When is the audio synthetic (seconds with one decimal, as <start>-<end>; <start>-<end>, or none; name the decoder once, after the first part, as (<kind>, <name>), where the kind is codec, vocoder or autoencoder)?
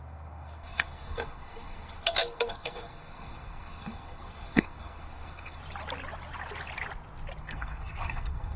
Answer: 0.0-5.6 (codec, SNAC); 7.4-8.6